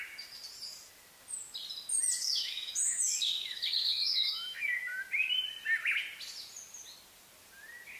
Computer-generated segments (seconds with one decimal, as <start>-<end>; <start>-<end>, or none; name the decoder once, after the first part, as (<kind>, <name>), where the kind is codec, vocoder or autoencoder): 2.2-5.0 (autoencoder, DAC-VAE)